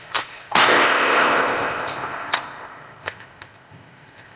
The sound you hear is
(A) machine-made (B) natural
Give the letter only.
A